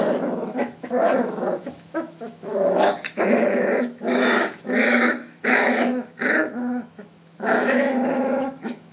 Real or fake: fake